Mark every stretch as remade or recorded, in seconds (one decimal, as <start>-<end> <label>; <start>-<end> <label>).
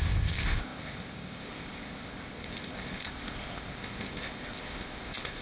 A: 0.0-5.4 remade